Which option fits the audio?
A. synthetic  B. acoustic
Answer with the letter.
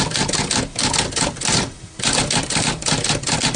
B